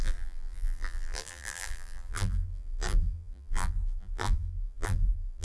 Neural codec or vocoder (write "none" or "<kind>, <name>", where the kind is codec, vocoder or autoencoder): vocoder, BigVGAN v2